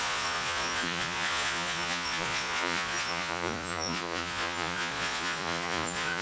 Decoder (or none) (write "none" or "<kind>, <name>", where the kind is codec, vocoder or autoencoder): vocoder, Vocos